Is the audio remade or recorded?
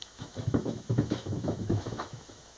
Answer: remade